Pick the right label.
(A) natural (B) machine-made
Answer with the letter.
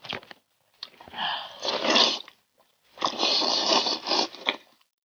B